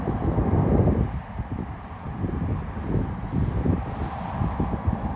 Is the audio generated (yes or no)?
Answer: no